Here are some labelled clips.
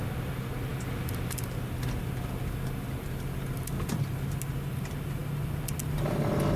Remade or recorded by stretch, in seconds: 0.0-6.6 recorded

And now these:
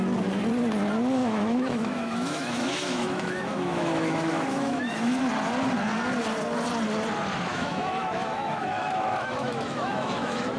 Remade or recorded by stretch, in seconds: 0.0-1.2 recorded; 1.2-5.2 remade; 5.2-7.5 recorded; 7.5-10.6 remade

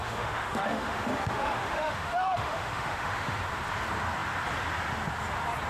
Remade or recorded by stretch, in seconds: 0.0-3.4 remade; 3.4-5.7 recorded

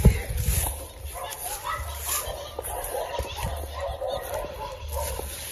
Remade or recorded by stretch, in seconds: 0.0-5.5 recorded

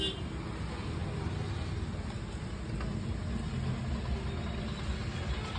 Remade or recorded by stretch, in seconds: 0.0-5.6 recorded

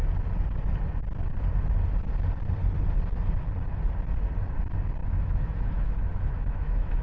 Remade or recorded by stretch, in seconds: 0.0-5.0 recorded; 5.0-7.0 remade